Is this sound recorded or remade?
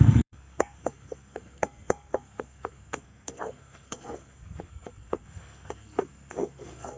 remade